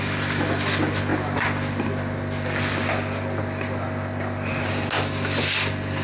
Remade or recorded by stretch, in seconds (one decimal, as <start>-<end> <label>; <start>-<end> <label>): 0.0-6.0 recorded